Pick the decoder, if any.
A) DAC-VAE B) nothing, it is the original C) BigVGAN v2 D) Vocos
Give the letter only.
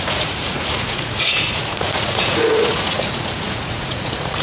D